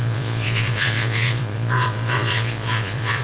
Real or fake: fake